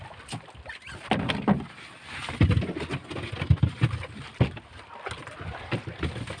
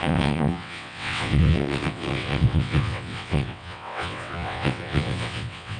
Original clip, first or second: first